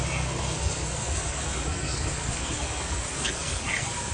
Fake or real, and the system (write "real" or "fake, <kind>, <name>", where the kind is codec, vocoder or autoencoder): fake, codec, SNAC